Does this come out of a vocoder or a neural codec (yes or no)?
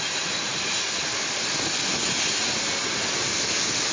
no